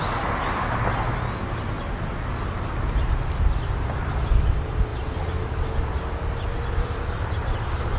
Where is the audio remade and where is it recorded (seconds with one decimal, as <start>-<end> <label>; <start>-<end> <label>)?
0.0-8.0 recorded